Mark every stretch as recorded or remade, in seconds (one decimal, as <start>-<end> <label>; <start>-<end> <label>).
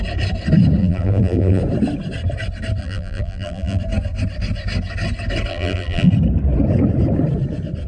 0.0-0.8 recorded; 0.8-1.6 remade; 1.6-2.8 recorded; 2.8-3.8 remade; 3.8-5.5 recorded; 5.5-6.1 remade; 6.1-7.9 recorded